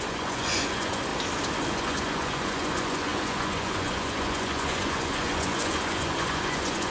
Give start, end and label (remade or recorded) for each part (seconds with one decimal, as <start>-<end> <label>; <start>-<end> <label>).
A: 0.0-1.1 remade; 1.1-1.7 recorded; 1.7-6.9 remade

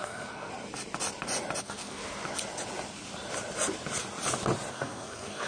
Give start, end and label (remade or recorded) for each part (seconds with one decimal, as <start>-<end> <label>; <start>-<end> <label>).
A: 0.0-0.5 remade; 0.5-1.6 recorded; 1.6-2.0 remade; 2.0-4.7 recorded; 4.7-5.5 remade

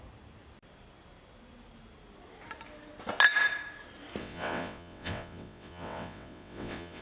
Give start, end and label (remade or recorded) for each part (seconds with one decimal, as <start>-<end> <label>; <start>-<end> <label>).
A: 0.0-4.2 recorded; 4.2-7.0 remade

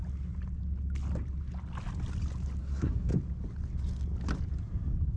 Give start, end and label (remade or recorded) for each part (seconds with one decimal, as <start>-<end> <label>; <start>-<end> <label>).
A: 0.0-2.6 recorded; 2.6-3.1 remade; 3.1-5.2 recorded

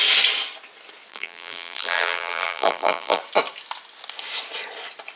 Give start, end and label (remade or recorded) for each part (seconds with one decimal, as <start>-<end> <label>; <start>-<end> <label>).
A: 0.0-1.1 recorded; 1.1-3.2 remade; 3.2-5.2 recorded

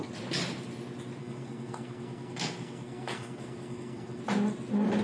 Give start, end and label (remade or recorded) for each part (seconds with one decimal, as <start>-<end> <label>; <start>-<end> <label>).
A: 0.0-1.2 recorded; 1.2-4.2 remade; 4.2-5.0 recorded

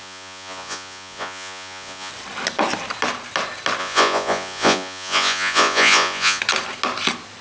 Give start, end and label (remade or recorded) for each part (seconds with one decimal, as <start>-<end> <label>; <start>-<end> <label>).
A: 0.0-2.1 remade; 2.1-3.8 recorded; 3.8-6.4 remade; 6.4-7.4 recorded

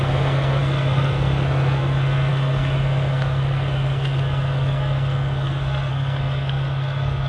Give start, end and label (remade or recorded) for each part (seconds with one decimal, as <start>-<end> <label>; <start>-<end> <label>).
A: 0.0-7.3 remade